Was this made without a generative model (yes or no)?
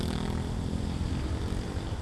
yes